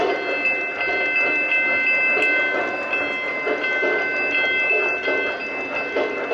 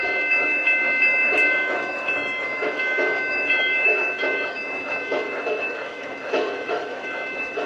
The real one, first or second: first